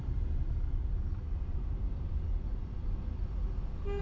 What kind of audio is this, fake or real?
real